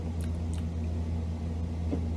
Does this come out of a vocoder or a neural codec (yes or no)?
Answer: no